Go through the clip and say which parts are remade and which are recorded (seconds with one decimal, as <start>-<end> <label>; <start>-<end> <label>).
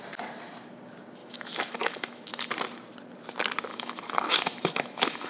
0.0-1.2 recorded; 1.2-2.5 remade; 2.5-3.7 recorded; 3.7-5.3 remade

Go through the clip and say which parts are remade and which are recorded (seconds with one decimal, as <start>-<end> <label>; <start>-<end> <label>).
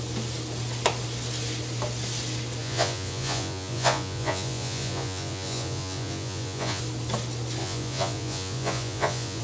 0.0-2.6 recorded; 2.6-6.8 remade; 6.8-7.6 recorded; 7.6-9.4 remade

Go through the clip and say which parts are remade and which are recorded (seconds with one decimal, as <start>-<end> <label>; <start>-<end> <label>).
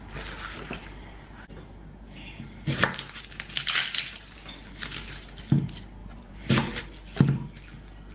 0.0-6.0 recorded; 6.0-6.8 remade; 6.8-8.1 recorded